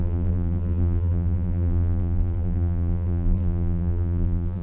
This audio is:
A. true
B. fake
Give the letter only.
B